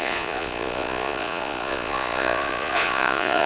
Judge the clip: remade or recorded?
remade